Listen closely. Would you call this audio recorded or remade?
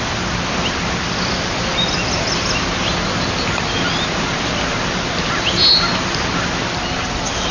recorded